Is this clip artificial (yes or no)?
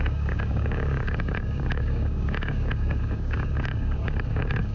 yes